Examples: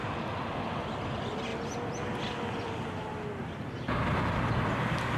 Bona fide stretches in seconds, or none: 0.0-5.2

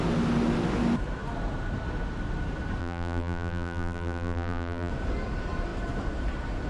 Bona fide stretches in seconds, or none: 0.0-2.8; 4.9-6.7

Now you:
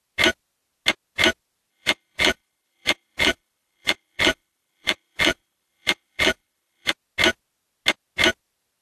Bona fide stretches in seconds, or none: 0.0-1.7; 6.9-8.8

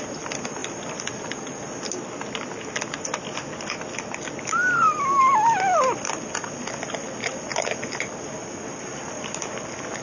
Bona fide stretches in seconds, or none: 0.0-7.5; 9.6-10.0

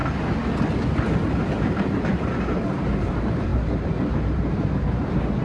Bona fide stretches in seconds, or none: 0.0-1.4

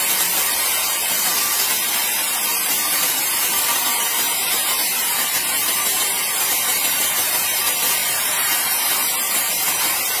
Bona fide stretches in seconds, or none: 0.0-2.5; 7.6-8.0